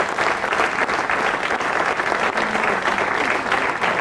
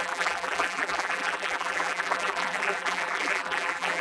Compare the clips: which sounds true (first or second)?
first